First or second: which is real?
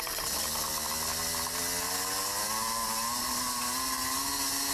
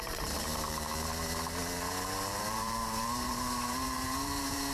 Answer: first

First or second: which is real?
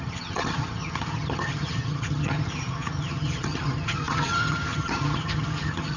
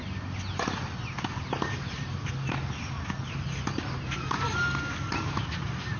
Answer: second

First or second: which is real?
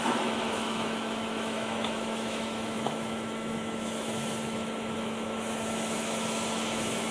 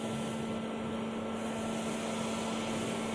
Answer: second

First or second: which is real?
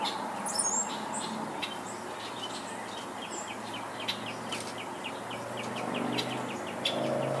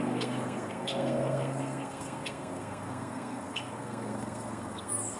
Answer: first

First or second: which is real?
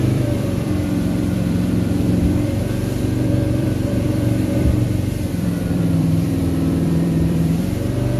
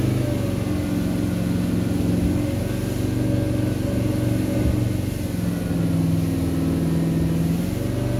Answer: second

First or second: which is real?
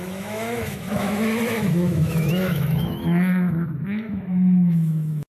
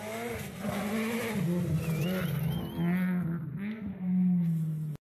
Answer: second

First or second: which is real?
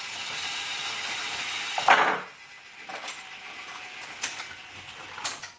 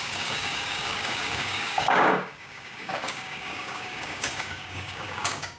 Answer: first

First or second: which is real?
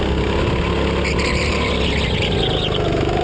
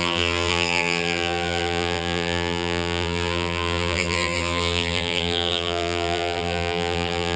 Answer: first